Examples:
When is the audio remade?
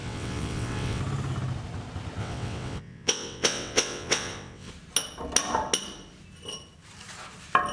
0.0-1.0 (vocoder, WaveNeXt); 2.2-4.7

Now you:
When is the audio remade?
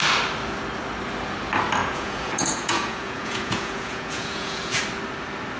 1.8-4.8 (vocoder, Vocos)